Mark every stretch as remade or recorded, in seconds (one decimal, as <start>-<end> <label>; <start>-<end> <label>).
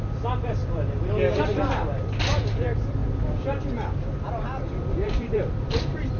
0.0-3.0 remade; 3.0-4.9 recorded; 4.9-6.2 remade